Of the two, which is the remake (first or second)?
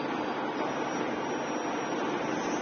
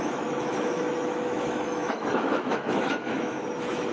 second